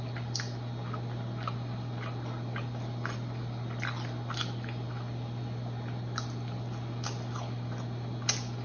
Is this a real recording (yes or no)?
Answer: yes